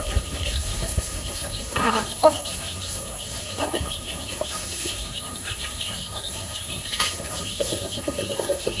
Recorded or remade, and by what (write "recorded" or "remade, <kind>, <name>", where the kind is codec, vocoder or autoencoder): remade, codec, SNAC